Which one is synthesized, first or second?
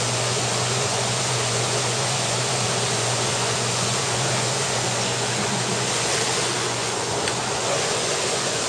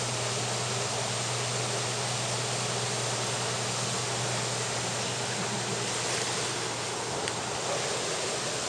first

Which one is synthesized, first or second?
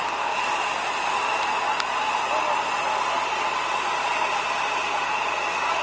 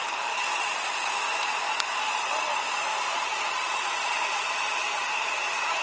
second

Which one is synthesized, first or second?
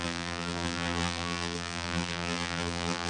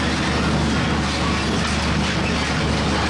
first